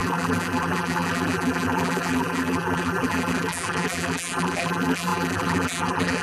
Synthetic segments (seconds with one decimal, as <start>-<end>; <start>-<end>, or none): 0.0-6.2